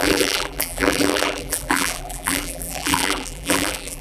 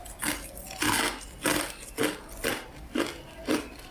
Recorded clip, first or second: second